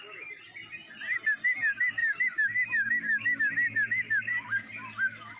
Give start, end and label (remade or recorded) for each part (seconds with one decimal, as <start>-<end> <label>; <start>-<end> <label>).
0.0-2.0 recorded; 2.0-3.4 remade; 3.4-5.4 recorded